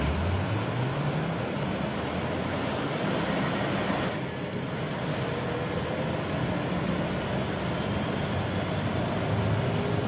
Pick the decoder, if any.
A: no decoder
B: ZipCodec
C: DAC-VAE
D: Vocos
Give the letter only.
A